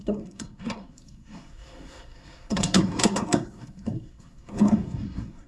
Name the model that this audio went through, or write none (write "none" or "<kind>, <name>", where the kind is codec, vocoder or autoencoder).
codec, SNAC